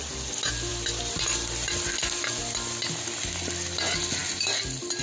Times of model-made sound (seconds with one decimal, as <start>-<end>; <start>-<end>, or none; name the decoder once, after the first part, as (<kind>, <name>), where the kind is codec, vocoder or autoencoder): none